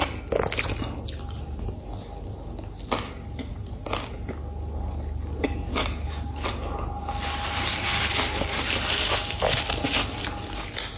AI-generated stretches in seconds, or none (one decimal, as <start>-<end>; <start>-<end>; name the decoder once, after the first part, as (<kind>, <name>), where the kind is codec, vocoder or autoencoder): 5.7-6.5 (codec, DAC)